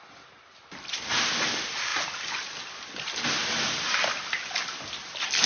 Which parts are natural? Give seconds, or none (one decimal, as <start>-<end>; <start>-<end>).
0.0-5.5